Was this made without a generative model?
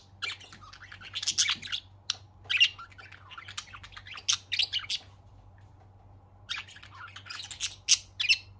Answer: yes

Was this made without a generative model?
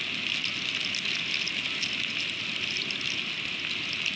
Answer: yes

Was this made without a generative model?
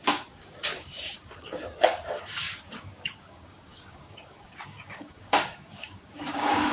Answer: no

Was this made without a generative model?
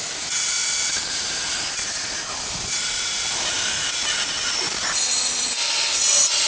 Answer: yes